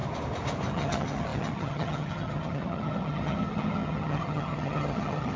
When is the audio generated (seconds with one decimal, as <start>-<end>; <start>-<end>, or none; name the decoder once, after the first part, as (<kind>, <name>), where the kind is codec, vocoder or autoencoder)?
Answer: 0.7-5.4 (vocoder, HiFi-GAN)